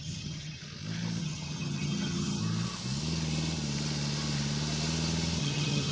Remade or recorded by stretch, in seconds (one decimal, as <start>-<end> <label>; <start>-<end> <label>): 0.0-0.6 remade; 0.6-1.2 recorded; 1.2-2.4 remade; 2.4-5.4 recorded; 5.4-5.9 remade